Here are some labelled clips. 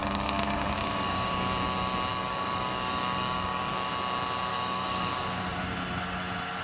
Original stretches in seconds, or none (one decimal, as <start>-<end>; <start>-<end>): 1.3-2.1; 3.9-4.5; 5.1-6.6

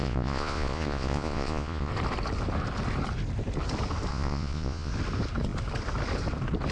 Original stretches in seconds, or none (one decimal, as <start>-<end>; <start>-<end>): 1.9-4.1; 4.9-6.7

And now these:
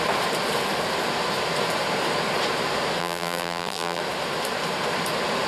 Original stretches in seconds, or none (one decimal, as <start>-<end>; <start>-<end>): 0.0-3.0; 4.0-5.5

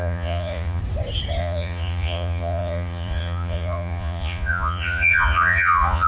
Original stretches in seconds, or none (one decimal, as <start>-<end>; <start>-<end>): 0.8-1.4

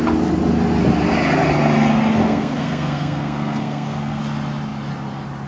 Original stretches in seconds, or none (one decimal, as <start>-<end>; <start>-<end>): 0.0-2.2; 4.2-5.5

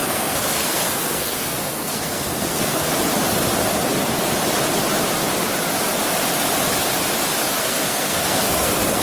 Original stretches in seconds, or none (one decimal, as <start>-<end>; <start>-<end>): 2.9-7.6

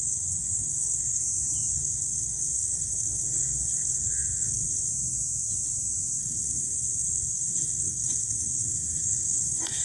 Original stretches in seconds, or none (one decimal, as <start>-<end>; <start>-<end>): 1.2-1.7; 4.9-6.2

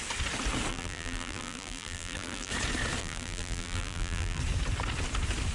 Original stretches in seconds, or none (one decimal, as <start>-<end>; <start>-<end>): 0.0-0.7; 2.5-3.0; 4.4-5.5